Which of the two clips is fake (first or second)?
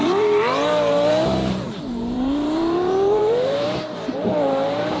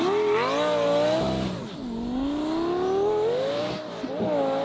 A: first